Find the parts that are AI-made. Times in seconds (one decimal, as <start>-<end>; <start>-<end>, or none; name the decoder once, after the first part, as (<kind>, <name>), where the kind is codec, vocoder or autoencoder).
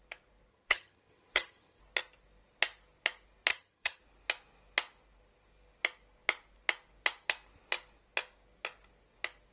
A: 0.5-1.8 (vocoder, HiFi-GAN); 3.5-4.0